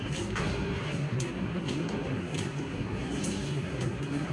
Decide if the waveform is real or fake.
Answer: fake